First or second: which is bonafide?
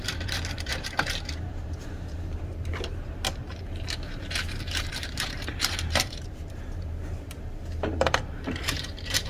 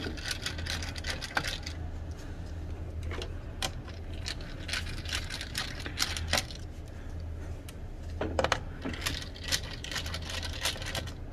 second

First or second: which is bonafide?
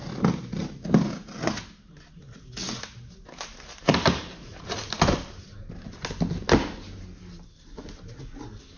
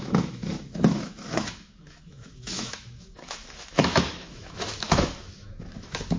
first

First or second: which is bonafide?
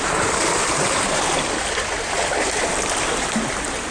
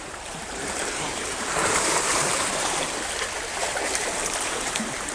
first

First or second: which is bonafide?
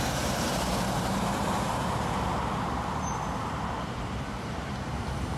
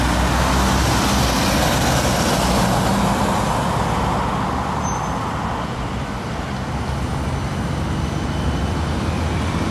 second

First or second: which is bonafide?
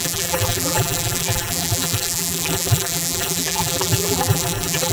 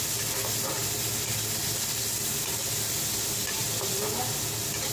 second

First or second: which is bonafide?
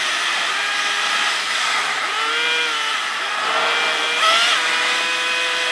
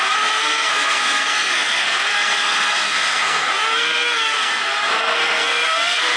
first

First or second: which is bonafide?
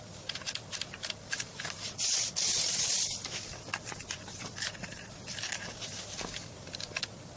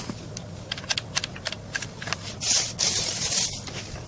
second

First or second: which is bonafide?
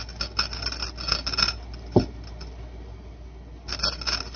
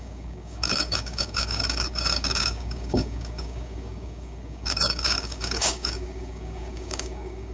first